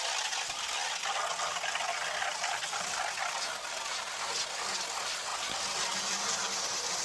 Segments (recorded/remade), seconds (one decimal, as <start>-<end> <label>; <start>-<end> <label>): 0.0-7.0 recorded